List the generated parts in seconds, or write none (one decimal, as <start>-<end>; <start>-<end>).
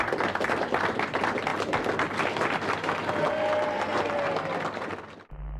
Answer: 1.5-4.9